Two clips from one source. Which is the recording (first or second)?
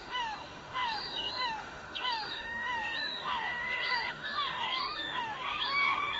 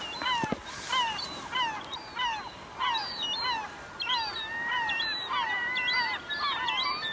second